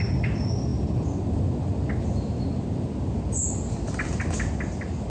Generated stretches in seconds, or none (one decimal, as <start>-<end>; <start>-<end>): none